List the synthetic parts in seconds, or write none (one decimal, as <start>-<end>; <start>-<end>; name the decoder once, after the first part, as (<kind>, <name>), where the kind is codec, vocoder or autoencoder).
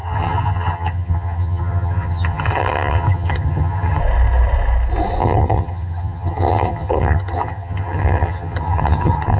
0.0-4.0 (vocoder, HiFi-GAN); 5.2-9.4